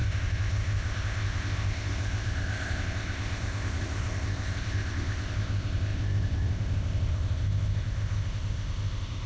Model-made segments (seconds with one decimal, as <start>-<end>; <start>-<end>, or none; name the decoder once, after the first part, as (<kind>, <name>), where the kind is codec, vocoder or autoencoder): 0.0-9.3 (codec, ZipCodec)